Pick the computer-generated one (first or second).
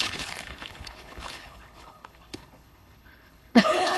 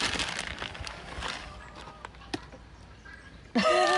first